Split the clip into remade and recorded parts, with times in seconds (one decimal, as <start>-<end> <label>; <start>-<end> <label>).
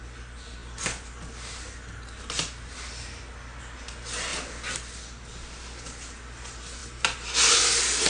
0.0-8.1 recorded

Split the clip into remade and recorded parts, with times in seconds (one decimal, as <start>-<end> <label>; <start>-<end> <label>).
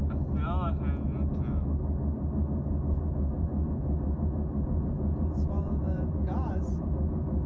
0.0-2.9 recorded; 2.9-7.5 remade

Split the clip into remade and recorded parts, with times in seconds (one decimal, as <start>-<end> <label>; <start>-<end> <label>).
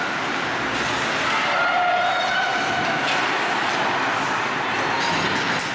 0.0-5.7 recorded